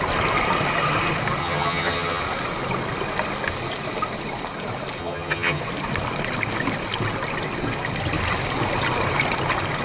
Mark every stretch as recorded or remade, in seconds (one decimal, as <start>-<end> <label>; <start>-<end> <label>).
0.0-1.4 recorded; 1.4-2.2 remade; 2.2-5.0 recorded; 5.0-5.6 remade; 5.6-9.8 recorded